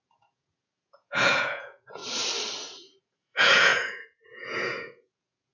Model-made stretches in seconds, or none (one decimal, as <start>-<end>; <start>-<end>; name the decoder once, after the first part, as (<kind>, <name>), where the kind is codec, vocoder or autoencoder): 0.0-2.0 (vocoder, Vocos); 3.0-5.5